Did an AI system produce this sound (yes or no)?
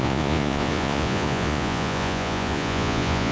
yes